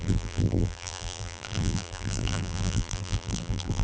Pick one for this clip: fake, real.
fake